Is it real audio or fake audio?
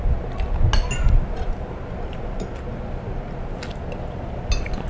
real